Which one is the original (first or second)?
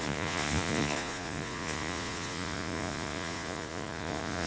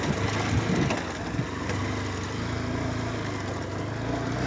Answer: second